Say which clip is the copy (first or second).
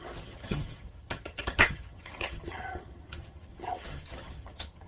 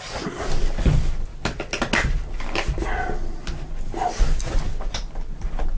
first